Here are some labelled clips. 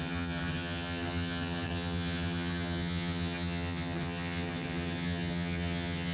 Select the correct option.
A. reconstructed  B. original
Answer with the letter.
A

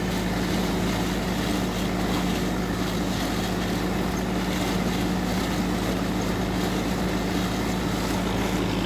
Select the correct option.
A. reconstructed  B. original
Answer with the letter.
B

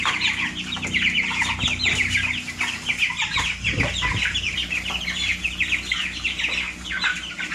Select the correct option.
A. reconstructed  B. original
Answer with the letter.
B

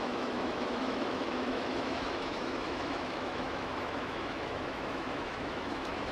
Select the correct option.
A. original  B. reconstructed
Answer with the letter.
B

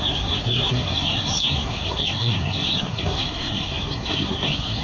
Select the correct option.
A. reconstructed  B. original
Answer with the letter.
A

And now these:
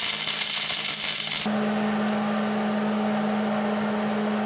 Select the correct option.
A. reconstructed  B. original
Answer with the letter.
B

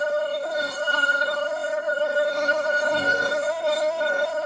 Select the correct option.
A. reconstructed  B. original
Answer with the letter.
A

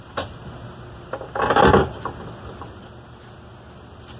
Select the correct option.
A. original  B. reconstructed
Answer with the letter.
A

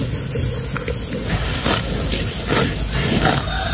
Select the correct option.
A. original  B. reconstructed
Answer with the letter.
A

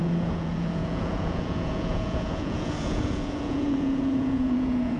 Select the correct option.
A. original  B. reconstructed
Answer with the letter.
B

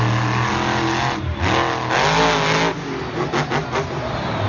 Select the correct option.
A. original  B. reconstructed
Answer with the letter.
A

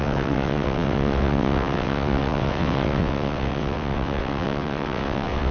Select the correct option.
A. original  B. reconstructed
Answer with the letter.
B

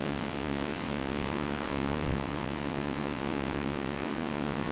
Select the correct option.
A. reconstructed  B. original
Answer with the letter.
A